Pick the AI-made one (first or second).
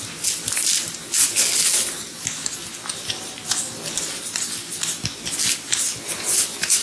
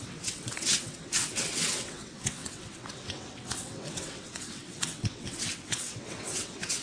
second